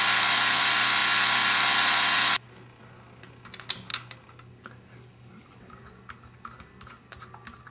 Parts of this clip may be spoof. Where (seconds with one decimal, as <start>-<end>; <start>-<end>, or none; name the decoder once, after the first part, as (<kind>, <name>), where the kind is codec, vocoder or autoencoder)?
none